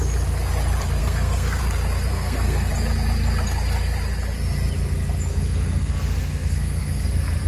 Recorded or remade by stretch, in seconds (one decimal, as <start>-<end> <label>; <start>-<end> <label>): 0.0-1.0 recorded; 1.0-1.6 remade; 1.6-2.1 recorded; 2.1-2.7 remade; 2.7-5.3 recorded; 5.3-7.1 remade; 7.1-7.5 recorded